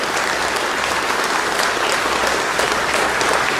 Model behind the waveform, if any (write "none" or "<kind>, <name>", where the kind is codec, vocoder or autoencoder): none